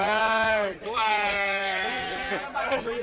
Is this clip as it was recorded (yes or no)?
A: no